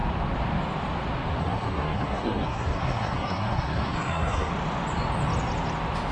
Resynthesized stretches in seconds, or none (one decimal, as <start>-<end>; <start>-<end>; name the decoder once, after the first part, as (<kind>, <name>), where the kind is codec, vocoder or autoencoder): 1.4-4.5 (codec, SNAC)